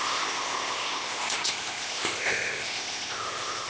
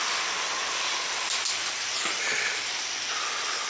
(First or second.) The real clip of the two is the second